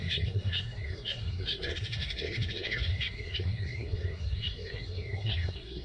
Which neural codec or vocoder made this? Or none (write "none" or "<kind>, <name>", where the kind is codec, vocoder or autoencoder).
codec, SNAC